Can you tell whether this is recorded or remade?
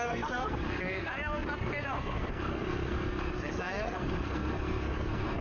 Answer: remade